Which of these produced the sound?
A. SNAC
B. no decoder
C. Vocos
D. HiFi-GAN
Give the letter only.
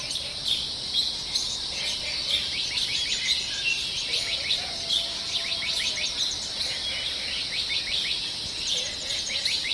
B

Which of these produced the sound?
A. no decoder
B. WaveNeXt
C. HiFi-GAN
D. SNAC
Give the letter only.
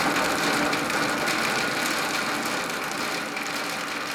A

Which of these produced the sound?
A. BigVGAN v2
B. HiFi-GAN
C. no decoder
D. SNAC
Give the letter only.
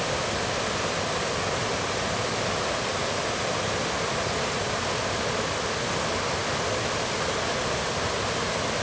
C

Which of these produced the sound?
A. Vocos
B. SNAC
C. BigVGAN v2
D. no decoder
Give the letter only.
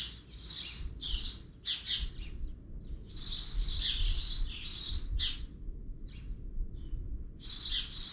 D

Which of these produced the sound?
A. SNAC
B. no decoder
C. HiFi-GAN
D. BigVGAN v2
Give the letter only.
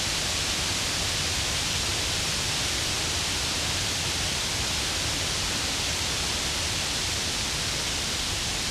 B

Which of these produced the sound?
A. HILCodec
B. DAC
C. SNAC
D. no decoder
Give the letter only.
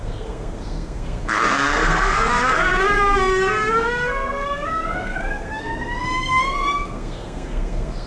C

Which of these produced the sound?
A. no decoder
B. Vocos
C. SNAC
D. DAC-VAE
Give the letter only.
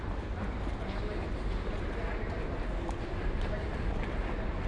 A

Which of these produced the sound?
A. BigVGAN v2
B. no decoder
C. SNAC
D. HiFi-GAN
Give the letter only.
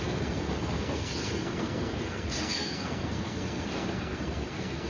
C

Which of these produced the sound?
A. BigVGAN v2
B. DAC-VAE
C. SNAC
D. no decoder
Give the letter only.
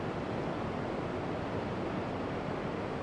D